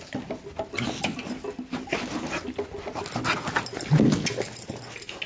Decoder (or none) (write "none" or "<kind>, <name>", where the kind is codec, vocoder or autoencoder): none